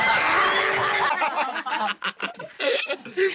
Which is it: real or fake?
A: real